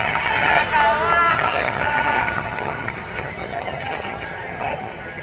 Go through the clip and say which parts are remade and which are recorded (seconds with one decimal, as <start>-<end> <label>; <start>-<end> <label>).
0.0-0.6 remade; 0.6-1.3 recorded; 1.3-5.2 remade